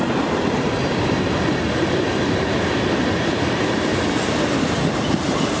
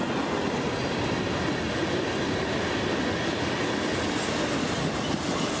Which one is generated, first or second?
first